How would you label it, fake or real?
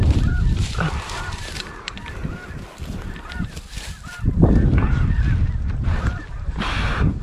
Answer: fake